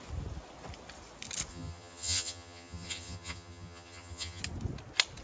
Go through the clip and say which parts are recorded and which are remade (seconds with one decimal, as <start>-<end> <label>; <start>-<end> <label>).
0.0-1.5 recorded; 1.5-4.4 remade; 4.4-5.2 recorded

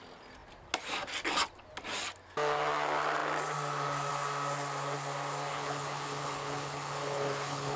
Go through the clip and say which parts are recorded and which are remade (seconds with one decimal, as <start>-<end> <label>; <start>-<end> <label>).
0.0-5.5 recorded; 5.5-7.8 remade